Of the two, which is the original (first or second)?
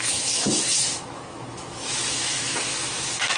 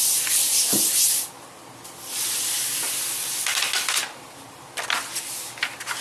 second